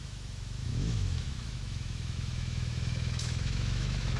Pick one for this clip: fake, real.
fake